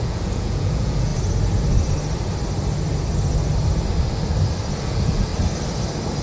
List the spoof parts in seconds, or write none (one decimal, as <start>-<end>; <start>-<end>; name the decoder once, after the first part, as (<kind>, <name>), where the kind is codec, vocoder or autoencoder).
0.0-1.1 (vocoder, Vocos); 4.8-5.3